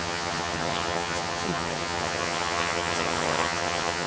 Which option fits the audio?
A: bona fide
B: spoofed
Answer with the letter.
B